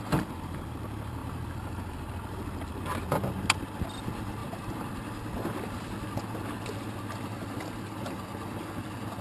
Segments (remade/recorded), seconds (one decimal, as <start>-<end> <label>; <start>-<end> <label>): 0.0-1.2 recorded; 1.2-2.8 remade; 2.8-4.4 recorded; 4.4-5.2 remade; 5.2-9.2 recorded